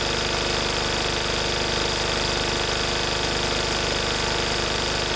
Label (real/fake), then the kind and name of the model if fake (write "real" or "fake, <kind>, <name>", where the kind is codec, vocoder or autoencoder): real